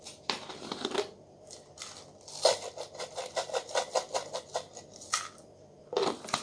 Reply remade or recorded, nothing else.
recorded